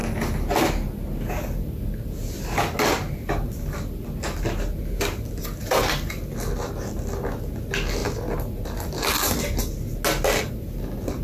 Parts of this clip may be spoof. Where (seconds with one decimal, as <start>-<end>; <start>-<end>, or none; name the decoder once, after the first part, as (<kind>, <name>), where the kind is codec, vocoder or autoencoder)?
none